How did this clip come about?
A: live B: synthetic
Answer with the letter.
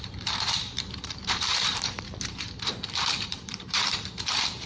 B